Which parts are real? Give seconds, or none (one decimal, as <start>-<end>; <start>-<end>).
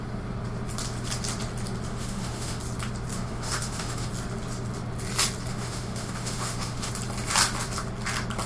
0.0-1.9; 2.6-3.1; 4.1-5.5; 6.9-8.5